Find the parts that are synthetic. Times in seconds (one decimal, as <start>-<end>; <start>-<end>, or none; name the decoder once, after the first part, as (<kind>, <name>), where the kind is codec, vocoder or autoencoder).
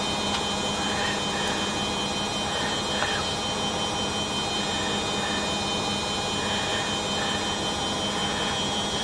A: none